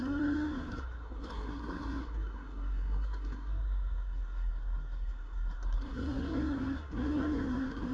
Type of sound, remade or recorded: remade